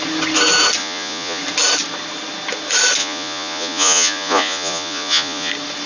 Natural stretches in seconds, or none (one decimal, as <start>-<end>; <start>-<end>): 0.0-0.8; 1.4-3.0; 5.5-5.9